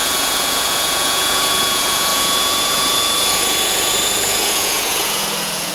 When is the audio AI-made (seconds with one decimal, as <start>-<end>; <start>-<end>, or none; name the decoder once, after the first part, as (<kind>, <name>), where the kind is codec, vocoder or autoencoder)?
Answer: 0.0-5.7 (vocoder, Vocos)